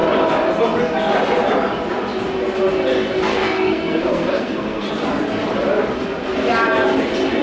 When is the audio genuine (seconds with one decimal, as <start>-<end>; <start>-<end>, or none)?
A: 0.0-3.3; 4.9-7.4

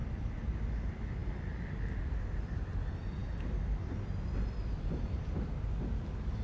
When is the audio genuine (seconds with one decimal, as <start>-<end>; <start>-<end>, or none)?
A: 0.0-6.4

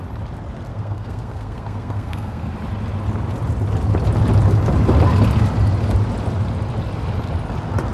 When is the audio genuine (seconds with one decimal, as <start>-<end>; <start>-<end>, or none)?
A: 0.0-0.7; 2.5-7.9

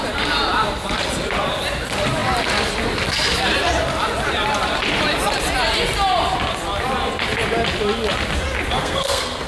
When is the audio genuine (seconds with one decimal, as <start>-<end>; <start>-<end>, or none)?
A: 0.0-8.8

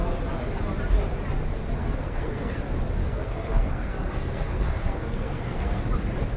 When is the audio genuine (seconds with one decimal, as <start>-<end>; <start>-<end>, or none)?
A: 0.0-1.5; 2.6-3.0; 5.8-6.4

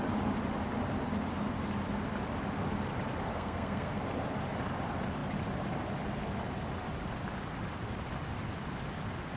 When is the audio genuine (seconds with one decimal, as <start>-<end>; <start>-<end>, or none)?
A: 0.0-3.3; 4.0-9.4

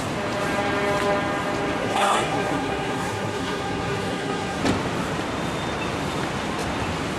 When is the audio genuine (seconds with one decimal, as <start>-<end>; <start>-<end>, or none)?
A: 0.0-1.8; 4.6-7.2